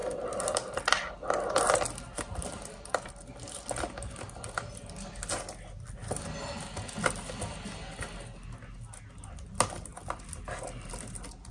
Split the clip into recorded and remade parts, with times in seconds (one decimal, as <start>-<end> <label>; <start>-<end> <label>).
0.0-3.1 remade; 3.1-9.9 recorded; 9.9-10.9 remade; 10.9-11.5 recorded